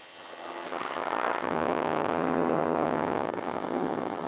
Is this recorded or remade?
remade